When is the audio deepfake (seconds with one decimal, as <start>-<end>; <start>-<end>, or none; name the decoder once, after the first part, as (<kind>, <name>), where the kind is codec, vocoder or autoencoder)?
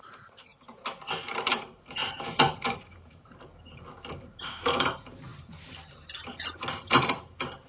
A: 2.0-3.4 (vocoder, BigVGAN v2); 5.3-5.9